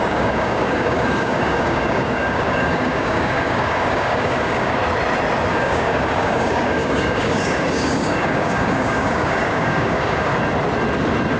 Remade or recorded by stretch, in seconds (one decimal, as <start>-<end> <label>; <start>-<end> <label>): 0.0-4.8 remade; 4.8-5.5 recorded; 5.5-10.3 remade; 10.3-11.4 recorded